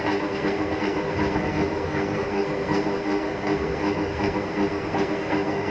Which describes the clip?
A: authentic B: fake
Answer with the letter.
B